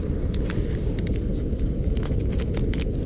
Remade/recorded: recorded